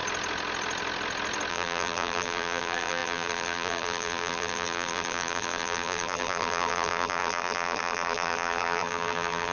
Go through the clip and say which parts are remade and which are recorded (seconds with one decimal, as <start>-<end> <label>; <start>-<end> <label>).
0.0-1.5 recorded; 1.5-9.5 remade